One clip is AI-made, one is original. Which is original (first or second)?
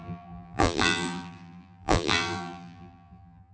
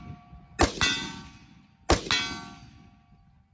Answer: second